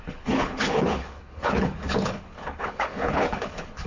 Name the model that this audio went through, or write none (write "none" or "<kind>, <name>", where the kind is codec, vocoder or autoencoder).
codec, HILCodec